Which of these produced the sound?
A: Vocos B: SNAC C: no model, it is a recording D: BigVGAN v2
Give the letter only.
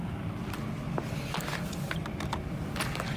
C